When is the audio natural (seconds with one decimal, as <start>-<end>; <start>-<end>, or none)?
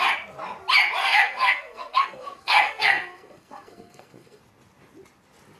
0.0-1.0; 4.4-5.6